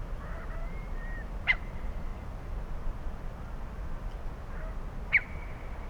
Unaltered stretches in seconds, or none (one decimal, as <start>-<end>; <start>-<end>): 2.1-5.9